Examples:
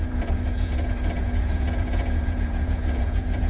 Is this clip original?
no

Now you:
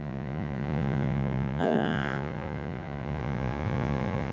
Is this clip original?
no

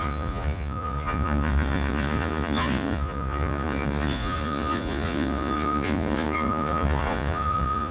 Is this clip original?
no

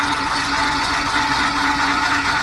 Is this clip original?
no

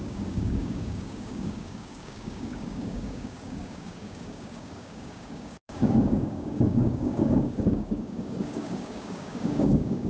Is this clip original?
no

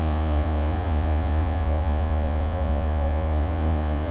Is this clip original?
no